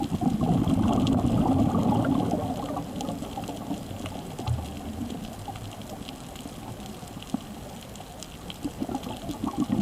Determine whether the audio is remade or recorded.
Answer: recorded